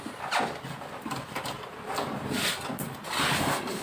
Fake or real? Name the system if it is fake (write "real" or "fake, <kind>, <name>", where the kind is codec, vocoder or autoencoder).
real